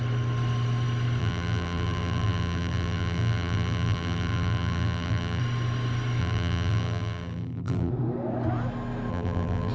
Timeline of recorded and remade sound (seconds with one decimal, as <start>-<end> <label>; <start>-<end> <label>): 0.0-1.2 recorded; 1.2-5.4 remade; 5.4-6.2 recorded; 6.2-7.9 remade; 7.9-9.1 recorded; 9.1-9.7 remade

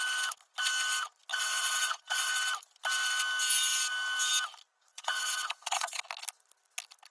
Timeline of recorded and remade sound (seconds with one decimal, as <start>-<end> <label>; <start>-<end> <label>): 0.0-1.3 recorded; 1.3-2.3 remade; 2.3-4.9 recorded; 4.9-6.0 remade; 6.0-7.1 recorded